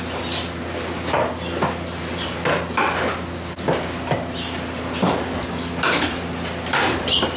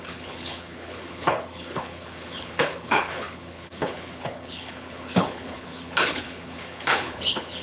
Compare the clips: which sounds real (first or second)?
first